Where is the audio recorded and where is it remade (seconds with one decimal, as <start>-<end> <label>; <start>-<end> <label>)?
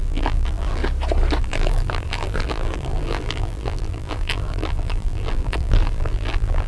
0.0-0.8 remade; 0.8-1.4 recorded; 1.4-6.7 remade